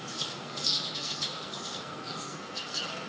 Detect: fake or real fake